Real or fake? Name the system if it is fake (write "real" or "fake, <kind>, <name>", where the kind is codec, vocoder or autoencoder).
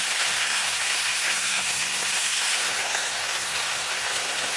fake, codec, SNAC